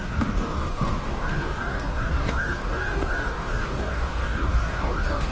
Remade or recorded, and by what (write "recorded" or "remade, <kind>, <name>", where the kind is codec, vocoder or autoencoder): remade, codec, DAC